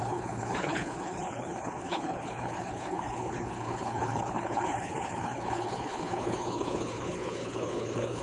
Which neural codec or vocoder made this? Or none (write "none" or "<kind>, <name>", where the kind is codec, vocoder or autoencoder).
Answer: codec, HILCodec